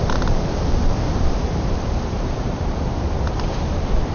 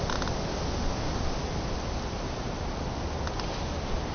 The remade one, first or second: first